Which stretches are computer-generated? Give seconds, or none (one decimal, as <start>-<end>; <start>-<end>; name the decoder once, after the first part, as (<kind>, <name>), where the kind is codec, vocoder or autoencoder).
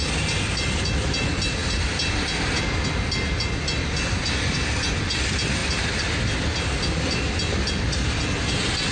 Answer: none